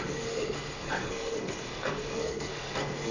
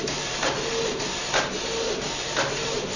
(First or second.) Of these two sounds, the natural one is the second